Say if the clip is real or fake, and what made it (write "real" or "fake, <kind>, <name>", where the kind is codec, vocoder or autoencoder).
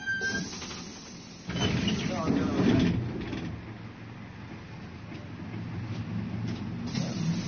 real